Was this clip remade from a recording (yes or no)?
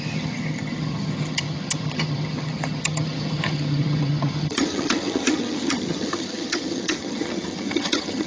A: yes